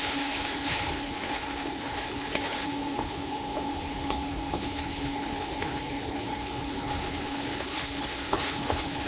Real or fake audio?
fake